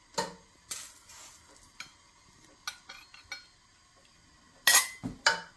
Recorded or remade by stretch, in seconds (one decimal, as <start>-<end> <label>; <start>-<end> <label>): 0.0-5.6 recorded